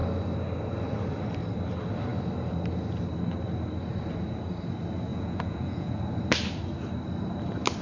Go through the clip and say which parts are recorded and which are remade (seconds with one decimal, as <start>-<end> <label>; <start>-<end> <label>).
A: 0.0-5.1 recorded; 5.1-6.0 remade; 6.0-7.8 recorded